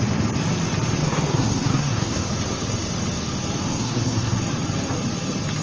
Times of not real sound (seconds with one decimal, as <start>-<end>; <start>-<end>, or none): 1.0-2.3; 3.6-4.4